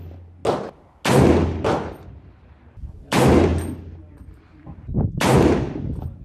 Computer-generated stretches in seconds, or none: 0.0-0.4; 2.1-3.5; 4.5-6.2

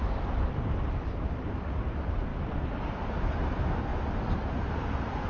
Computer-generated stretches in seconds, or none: 0.5-2.3; 2.9-3.9; 4.4-5.3